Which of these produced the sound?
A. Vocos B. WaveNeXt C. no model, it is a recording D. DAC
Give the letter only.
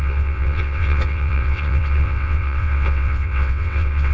B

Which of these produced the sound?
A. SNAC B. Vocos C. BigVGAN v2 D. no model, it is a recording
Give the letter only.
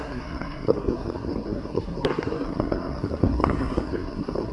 A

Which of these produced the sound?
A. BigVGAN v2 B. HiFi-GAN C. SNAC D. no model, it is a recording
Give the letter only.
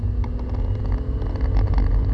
D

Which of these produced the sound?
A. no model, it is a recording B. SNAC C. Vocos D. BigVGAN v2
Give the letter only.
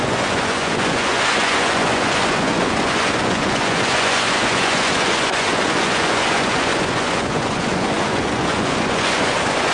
C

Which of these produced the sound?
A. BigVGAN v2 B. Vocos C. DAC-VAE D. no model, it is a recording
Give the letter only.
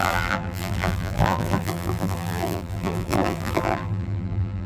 A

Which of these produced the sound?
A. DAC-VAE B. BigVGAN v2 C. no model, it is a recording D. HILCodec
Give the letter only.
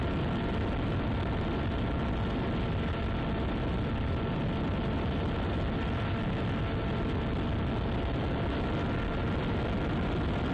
C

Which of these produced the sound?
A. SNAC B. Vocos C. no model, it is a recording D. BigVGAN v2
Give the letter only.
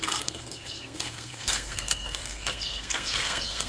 A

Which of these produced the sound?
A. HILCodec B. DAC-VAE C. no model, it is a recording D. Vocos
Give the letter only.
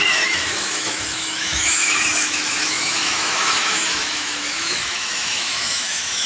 B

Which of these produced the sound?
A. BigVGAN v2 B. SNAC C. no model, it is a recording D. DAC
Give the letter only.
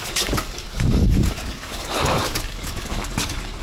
D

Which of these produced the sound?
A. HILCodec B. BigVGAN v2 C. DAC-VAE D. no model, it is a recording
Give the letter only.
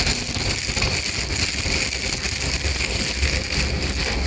D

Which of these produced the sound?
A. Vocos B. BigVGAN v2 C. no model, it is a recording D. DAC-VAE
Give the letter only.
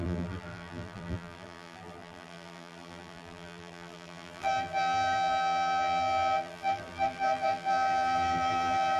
B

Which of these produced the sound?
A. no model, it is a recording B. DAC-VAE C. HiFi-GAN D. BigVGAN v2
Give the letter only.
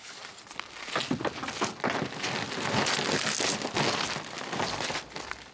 A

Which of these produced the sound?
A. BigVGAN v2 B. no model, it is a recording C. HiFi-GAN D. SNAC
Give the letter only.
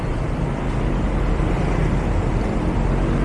B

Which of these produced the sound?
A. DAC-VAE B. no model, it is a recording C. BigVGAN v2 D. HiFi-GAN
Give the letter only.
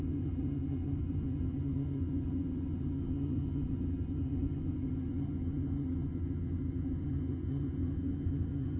D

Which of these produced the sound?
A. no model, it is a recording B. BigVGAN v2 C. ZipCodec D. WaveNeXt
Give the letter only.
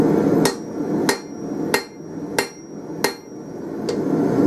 A